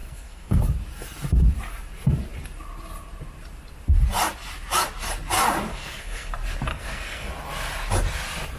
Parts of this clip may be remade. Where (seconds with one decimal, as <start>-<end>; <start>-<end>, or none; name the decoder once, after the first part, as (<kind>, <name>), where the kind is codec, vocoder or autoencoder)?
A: 0.0-0.6 (codec, SNAC); 5.7-6.3; 6.7-7.3